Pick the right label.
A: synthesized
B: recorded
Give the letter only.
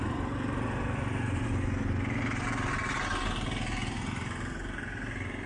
B